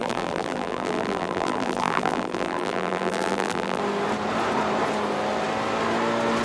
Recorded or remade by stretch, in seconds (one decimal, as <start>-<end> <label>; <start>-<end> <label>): 0.0-3.8 remade; 3.8-6.4 recorded